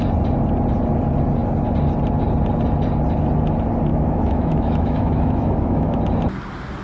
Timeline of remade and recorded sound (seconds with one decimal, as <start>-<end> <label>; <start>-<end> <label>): 0.0-3.9 recorded; 3.9-6.0 remade; 6.0-6.8 recorded